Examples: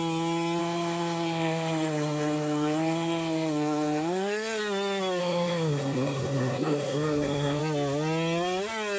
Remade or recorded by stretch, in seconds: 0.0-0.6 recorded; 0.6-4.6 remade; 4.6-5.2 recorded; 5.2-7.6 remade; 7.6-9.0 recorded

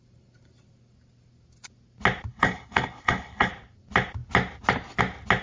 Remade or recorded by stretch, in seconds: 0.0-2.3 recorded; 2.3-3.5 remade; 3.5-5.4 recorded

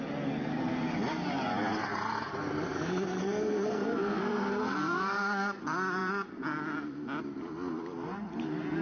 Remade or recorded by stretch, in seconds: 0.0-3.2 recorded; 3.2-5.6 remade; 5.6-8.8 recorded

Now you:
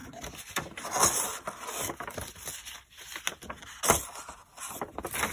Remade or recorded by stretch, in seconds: 0.0-5.3 recorded

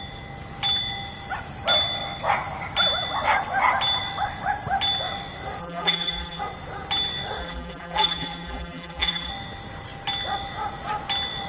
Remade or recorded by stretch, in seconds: 0.0-5.6 recorded; 5.6-6.4 remade; 6.4-7.4 recorded; 7.4-9.3 remade; 9.3-11.5 recorded

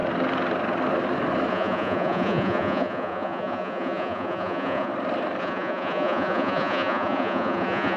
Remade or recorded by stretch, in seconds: 0.0-1.5 recorded; 1.5-4.9 remade; 4.9-5.4 recorded; 5.4-8.0 remade

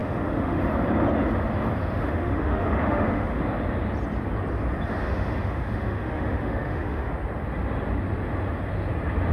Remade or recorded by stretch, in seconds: 0.0-0.6 remade; 0.6-1.8 recorded; 1.8-3.4 remade; 3.4-4.9 recorded; 4.9-7.1 remade; 7.1-9.3 recorded

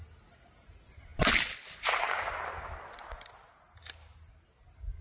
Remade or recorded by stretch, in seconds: 0.0-5.0 recorded